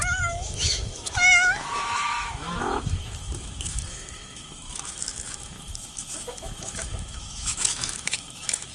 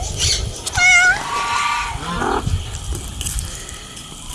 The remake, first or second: first